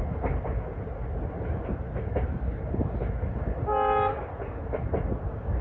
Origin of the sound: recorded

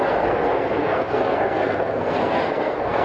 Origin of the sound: remade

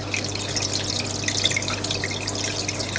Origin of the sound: recorded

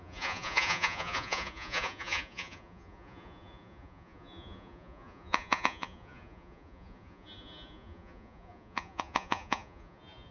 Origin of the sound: remade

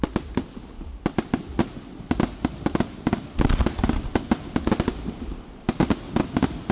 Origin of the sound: recorded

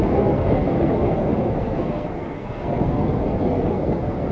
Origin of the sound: remade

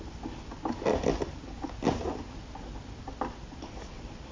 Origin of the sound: recorded